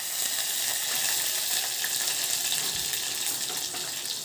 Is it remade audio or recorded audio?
recorded